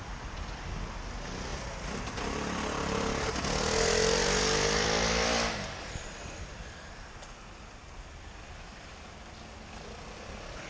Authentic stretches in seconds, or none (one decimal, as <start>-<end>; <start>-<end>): 0.0-1.5; 3.3-10.7